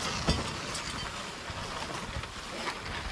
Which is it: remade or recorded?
recorded